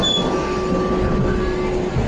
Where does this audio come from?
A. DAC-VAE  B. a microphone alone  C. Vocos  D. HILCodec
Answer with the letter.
B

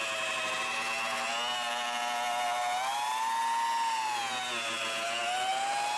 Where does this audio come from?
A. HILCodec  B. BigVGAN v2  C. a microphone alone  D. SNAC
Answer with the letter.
C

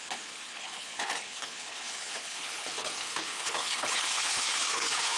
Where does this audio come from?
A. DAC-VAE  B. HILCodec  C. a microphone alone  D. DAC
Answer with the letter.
B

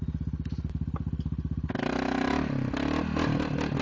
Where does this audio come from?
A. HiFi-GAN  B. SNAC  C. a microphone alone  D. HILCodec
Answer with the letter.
C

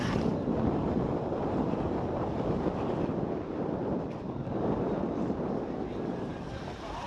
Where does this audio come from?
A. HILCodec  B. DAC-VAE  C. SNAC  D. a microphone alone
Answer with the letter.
D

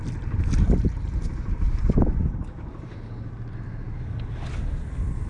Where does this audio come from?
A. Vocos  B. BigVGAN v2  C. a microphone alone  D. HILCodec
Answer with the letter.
C